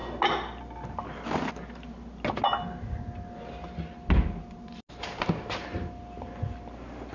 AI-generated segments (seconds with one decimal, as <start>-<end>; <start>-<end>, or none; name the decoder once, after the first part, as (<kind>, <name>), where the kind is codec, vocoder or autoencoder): none